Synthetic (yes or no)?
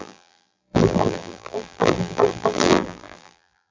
yes